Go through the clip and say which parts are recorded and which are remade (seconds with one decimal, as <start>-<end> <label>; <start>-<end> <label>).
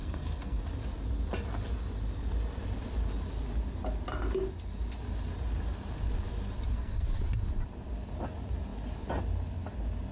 0.0-0.6 remade; 0.6-6.7 recorded; 6.7-7.2 remade; 7.2-10.1 recorded